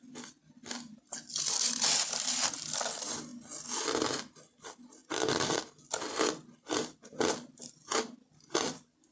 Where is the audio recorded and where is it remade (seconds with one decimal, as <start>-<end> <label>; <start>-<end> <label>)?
0.0-0.6 remade; 0.6-1.3 recorded; 1.3-3.3 remade; 3.3-4.6 recorded; 4.6-5.0 remade; 5.0-5.9 recorded; 5.9-9.1 remade